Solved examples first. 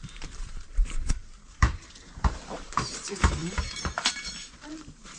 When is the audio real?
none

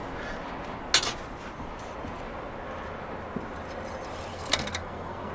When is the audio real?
0.0-4.3

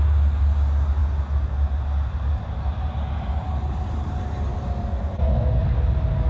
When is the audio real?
0.0-6.3